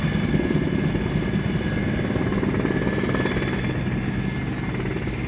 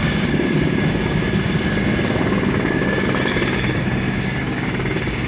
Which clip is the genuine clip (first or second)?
first